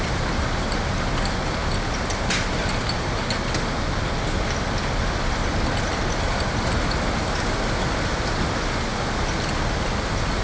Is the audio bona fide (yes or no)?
yes